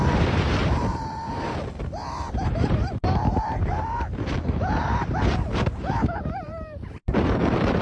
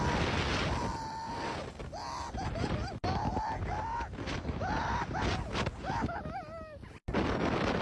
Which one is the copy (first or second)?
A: first